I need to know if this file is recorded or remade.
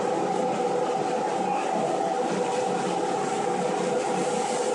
recorded